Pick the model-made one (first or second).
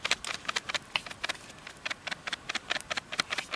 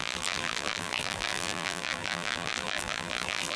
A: second